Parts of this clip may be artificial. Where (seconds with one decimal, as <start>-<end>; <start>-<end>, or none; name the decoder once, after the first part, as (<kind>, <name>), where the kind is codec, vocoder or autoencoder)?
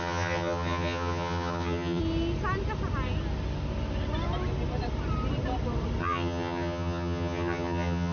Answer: 0.0-2.0 (vocoder, HiFi-GAN); 6.0-8.1